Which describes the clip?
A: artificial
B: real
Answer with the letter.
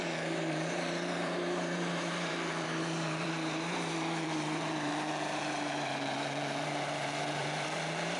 A